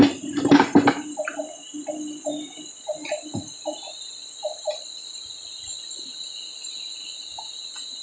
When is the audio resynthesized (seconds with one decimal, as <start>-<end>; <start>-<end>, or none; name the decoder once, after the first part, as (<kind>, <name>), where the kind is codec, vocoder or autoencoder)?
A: 2.3-7.1 (vocoder, BigVGAN v2)